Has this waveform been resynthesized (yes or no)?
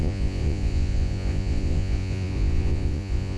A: yes